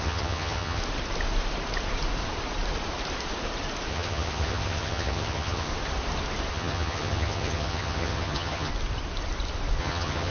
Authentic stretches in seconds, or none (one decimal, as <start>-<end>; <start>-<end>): 0.8-3.9; 5.7-6.5; 8.7-9.8